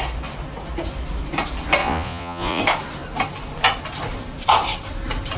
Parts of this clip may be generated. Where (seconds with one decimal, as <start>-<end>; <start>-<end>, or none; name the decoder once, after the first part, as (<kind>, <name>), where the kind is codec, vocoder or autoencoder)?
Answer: 1.8-2.6 (vocoder, Vocos)